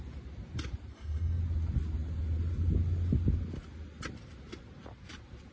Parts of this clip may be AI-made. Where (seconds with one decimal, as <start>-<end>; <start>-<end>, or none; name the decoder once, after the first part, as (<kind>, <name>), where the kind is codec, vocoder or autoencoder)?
0.9-1.4 (codec, SNAC)